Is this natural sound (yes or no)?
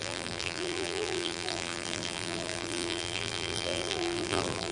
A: no